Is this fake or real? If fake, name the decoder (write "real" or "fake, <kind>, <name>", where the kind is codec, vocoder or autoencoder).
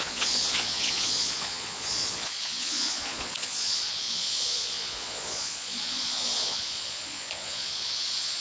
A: fake, vocoder, Vocos